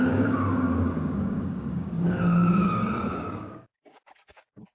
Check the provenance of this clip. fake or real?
fake